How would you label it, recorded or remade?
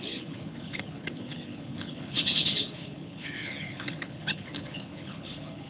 remade